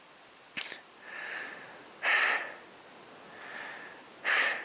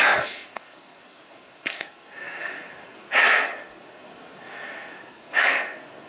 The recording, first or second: first